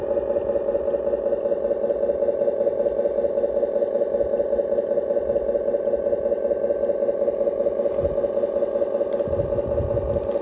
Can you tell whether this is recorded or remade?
recorded